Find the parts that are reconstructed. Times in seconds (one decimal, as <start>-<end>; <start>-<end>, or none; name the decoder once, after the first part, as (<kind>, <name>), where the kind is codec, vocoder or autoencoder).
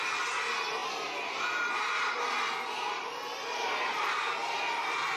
none